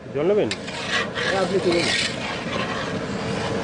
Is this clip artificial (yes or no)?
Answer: no